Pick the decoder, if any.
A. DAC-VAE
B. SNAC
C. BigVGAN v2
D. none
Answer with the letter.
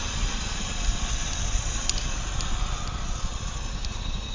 D